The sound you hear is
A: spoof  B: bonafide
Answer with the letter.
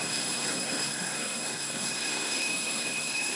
A